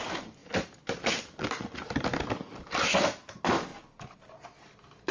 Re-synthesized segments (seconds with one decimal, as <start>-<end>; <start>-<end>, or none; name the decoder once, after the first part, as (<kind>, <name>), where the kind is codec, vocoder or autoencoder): none

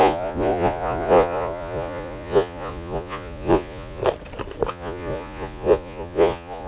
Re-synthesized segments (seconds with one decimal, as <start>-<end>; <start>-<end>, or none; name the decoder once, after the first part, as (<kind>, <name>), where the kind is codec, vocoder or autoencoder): 0.0-4.0 (vocoder, Vocos); 4.7-6.7

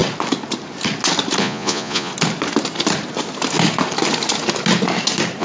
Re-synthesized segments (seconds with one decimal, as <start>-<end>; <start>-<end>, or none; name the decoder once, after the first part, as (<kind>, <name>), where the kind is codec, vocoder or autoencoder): 1.4-2.1 (vocoder, Vocos)

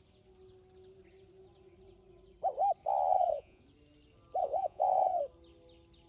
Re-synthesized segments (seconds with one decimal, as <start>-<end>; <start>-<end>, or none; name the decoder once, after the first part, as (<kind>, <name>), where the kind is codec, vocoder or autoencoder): 3.1-3.6 (vocoder, Vocos); 4.4-5.2

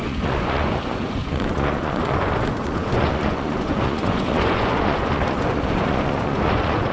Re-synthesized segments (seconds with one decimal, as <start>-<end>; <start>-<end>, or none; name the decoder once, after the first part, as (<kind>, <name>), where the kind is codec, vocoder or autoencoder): 0.0-6.9 (vocoder, Vocos)

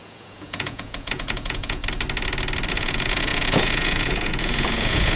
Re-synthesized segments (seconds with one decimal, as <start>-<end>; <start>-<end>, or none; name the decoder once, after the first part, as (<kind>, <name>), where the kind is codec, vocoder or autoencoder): 0.0-1.8 (vocoder, Vocos); 2.7-5.2

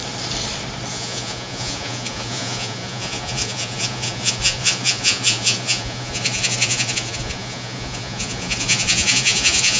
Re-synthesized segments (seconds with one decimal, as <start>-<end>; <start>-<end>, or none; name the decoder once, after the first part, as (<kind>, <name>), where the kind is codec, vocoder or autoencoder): 0.9-9.8 (vocoder, Vocos)